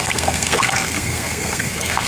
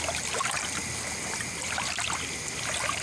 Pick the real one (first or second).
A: second